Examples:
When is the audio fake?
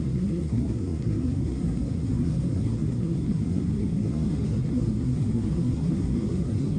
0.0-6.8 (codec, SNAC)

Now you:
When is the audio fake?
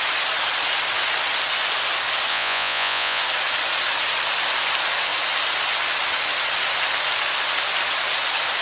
2.3-3.2 (vocoder, Vocos)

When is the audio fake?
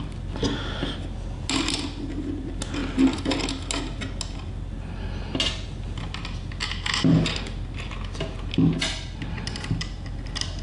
none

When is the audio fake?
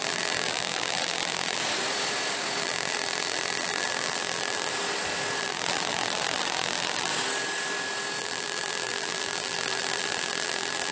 0.0-1.6 (vocoder, BigVGAN v2); 2.6-4.7; 5.4-7.1; 8.2-10.9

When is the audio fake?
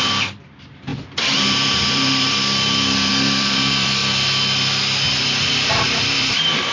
0.0-4.0 (vocoder, BigVGAN v2); 5.5-6.7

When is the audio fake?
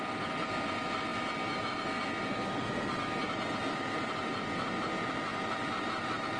none